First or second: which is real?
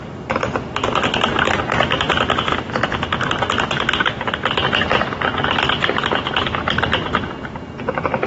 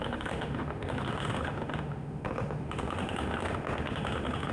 first